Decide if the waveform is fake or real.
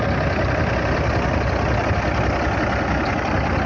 real